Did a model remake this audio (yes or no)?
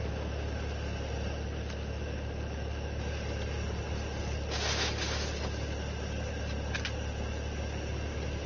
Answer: no